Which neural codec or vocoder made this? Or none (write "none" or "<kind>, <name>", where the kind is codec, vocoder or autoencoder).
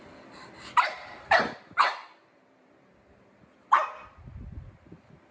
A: vocoder, BigVGAN v2